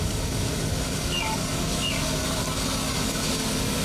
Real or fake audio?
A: fake